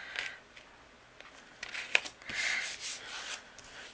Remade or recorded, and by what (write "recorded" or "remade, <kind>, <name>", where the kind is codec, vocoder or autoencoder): recorded